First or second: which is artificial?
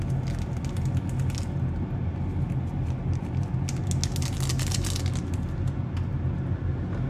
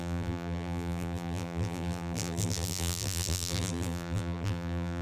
second